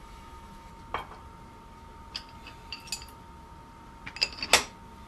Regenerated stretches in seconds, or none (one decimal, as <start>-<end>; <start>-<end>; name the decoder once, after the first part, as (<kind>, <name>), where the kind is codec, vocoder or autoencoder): 0.0-0.7 (autoencoder, DAC-VAE)